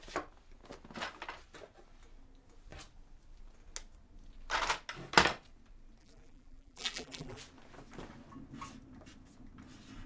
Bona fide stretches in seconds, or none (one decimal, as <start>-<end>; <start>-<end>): 0.0-6.0; 7.4-10.1